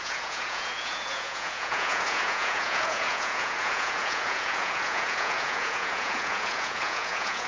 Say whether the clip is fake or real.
fake